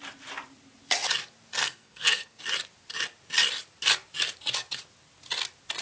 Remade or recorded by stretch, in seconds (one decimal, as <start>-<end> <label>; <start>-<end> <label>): 0.0-1.6 recorded; 1.6-2.4 remade; 2.4-5.8 recorded